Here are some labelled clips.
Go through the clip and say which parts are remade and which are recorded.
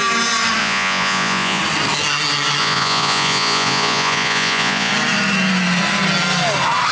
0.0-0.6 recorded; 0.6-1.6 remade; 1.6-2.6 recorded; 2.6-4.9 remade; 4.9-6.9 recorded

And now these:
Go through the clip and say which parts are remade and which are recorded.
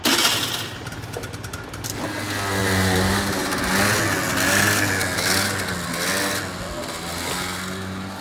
0.0-2.6 recorded; 2.6-3.6 remade; 3.6-8.2 recorded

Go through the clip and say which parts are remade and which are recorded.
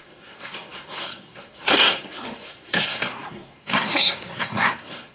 0.0-5.1 remade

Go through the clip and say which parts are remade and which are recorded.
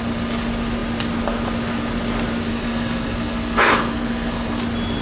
0.0-2.5 recorded; 2.5-4.6 remade; 4.6-5.0 recorded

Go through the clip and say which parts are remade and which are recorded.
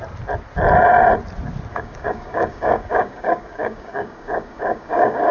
0.0-1.7 recorded; 1.7-5.3 remade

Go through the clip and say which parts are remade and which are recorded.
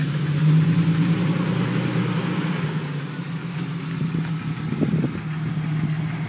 0.0-1.2 remade; 1.2-6.3 recorded